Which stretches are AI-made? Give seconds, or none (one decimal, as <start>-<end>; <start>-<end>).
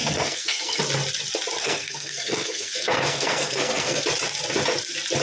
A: 0.0-0.8; 1.6-4.0